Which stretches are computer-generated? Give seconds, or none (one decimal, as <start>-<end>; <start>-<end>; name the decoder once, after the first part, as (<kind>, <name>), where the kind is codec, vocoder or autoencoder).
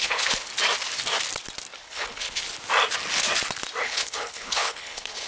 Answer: 0.0-0.5 (codec, HILCodec); 1.8-2.4; 3.8-5.3